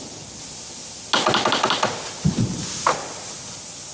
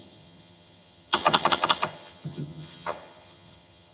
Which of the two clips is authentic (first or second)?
first